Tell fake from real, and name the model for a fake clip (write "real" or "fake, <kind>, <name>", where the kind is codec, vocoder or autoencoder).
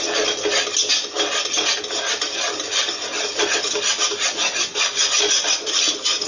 real